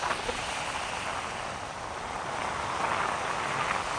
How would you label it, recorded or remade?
recorded